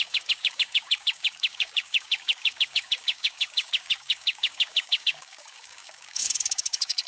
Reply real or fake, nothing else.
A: fake